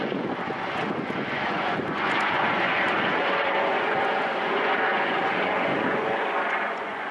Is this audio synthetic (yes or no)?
yes